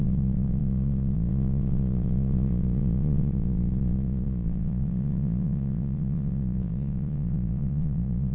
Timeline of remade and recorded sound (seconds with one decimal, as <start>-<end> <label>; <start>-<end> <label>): 0.0-8.3 remade